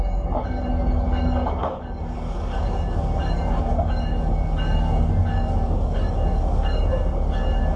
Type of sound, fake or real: fake